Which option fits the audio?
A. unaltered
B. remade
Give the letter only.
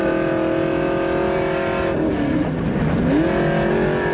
A